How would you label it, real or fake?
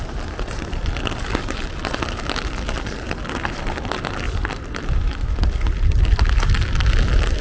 real